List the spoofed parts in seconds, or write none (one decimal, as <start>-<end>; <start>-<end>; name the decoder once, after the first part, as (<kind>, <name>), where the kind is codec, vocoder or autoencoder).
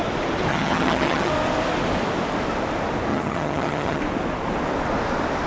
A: 0.5-1.3 (vocoder, HiFi-GAN); 3.1-4.0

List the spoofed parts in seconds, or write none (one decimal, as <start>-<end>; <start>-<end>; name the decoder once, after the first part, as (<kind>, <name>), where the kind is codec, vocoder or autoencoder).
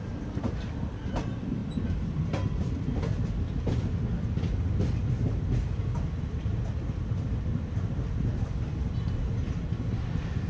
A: none